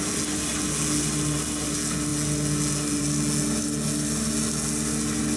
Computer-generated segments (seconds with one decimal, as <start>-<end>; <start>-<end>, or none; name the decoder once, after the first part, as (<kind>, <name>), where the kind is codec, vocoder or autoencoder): none